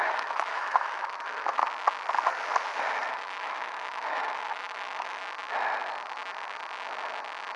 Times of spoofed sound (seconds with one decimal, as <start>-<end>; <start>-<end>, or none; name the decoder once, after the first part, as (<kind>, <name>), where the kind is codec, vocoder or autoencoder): 0.0-1.6 (autoencoder, DAC-VAE); 3.1-5.2